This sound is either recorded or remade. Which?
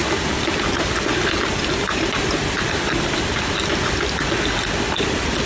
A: recorded